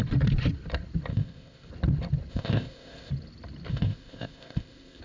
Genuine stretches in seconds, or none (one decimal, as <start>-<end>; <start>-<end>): 0.0-1.1; 1.7-2.3; 3.1-3.7